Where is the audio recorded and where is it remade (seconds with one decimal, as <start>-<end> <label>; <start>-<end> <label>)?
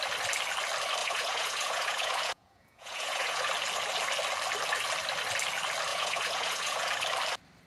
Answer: 0.0-1.0 recorded; 1.0-3.5 remade; 3.5-5.9 recorded; 5.9-6.9 remade; 6.9-7.7 recorded